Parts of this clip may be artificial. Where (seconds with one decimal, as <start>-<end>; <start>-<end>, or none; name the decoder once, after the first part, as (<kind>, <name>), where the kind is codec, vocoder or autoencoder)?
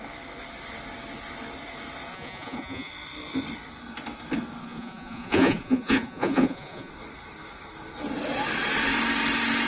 2.1-2.9 (vocoder, Vocos); 4.6-6.9